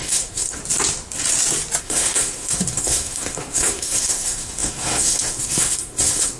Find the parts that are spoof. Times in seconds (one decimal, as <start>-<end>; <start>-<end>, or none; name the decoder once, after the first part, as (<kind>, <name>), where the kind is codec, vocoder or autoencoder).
0.0-0.6 (codec, SNAC); 1.8-6.4